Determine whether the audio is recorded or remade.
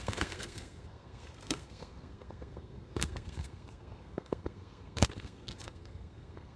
remade